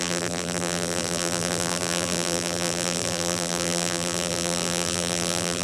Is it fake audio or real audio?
fake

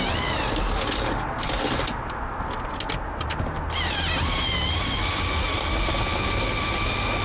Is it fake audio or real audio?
real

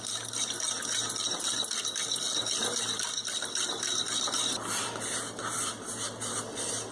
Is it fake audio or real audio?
real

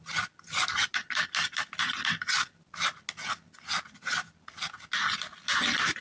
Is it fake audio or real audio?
real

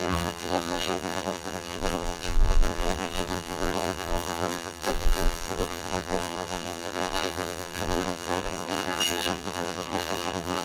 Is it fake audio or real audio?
fake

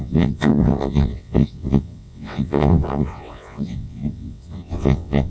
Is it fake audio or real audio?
fake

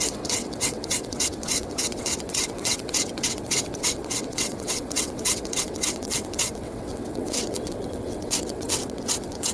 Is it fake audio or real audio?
fake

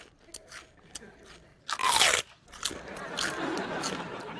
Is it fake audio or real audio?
real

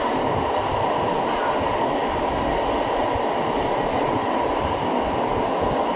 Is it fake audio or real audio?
real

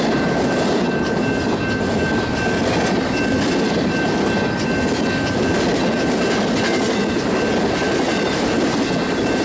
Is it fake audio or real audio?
real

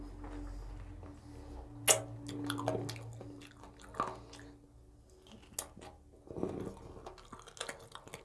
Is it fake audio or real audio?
real